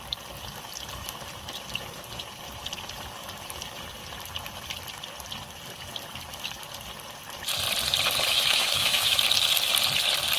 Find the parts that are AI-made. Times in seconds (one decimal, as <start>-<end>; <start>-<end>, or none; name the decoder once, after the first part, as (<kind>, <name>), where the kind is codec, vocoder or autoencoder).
8.3-9.2 (autoencoder, DAC-VAE)